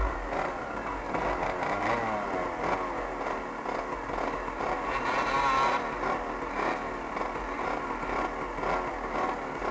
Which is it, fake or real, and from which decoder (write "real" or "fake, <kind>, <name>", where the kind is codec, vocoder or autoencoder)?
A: real